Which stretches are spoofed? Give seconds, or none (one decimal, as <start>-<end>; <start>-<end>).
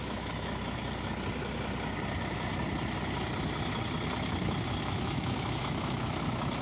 0.0-0.8; 4.8-6.6